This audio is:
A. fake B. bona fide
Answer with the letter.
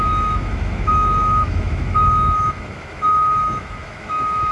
A